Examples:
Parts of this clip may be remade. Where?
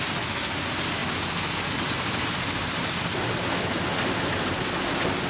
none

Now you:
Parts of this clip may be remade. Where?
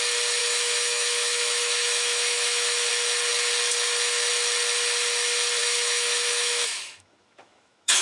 0.4-2.9; 5.6-8.0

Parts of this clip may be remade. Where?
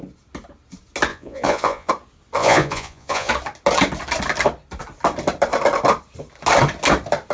1.1-1.9; 2.4-3.3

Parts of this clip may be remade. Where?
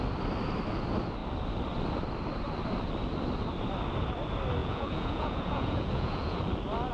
4.6-6.4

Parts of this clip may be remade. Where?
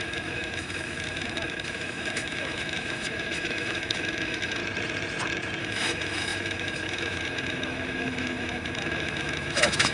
0.0-4.6; 5.6-9.9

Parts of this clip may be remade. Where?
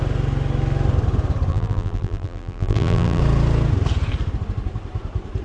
1.5-3.2